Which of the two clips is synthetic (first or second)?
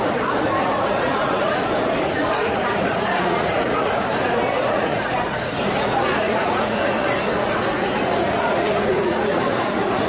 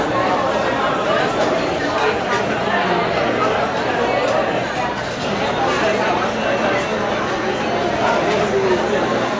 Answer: first